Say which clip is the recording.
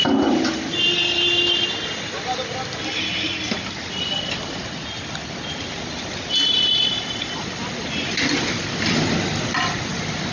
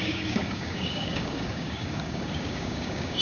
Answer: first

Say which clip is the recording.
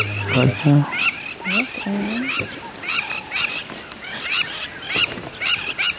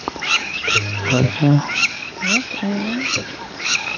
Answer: first